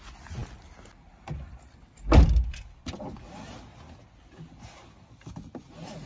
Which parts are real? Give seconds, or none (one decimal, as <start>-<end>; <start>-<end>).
0.0-6.1